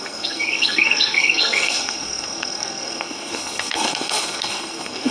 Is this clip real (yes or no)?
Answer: no